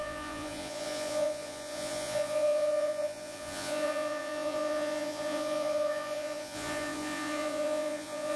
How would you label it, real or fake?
fake